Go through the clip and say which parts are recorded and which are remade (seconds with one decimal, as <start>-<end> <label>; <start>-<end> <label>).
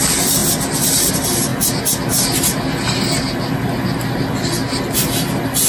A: 0.0-5.7 recorded